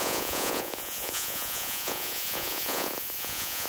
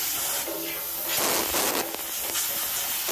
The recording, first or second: second